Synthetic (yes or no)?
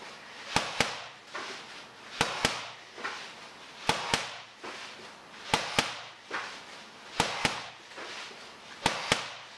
no